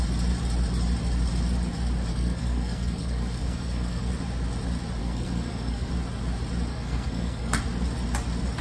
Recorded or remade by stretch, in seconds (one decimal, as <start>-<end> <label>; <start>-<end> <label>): 0.0-2.1 recorded; 2.1-4.1 remade; 4.1-5.0 recorded; 5.0-5.9 remade; 5.9-6.7 recorded; 6.7-7.6 remade; 7.6-8.6 recorded

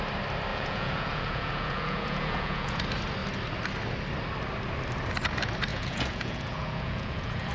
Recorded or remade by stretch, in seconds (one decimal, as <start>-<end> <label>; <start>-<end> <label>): 0.0-0.5 recorded; 0.5-2.8 remade; 2.8-5.7 recorded; 5.7-7.5 remade

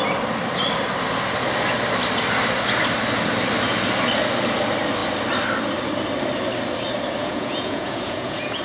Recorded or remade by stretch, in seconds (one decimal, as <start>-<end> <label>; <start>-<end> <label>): 0.0-7.2 recorded; 7.2-8.6 remade

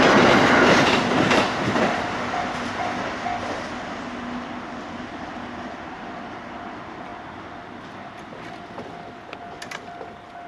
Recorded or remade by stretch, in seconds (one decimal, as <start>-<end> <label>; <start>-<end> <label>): 0.0-10.5 recorded

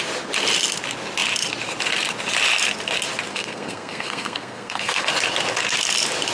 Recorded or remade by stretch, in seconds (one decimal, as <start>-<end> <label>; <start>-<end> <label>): 0.0-3.3 recorded; 3.3-5.1 remade; 5.1-6.3 recorded